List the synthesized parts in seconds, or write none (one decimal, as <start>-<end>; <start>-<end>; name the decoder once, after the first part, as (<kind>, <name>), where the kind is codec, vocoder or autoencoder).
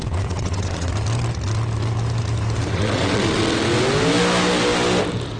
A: 0.0-0.9 (vocoder, WaveNeXt); 2.7-3.4